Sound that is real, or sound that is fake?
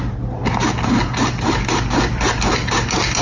real